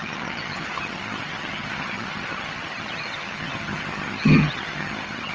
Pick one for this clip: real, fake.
fake